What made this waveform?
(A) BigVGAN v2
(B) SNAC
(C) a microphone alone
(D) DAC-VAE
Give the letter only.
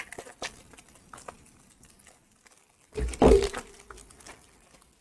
C